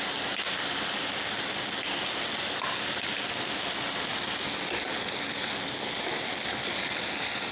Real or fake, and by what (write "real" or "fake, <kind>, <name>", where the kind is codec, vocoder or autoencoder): real